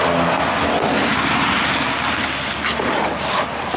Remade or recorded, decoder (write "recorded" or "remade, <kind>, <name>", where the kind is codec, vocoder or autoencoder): recorded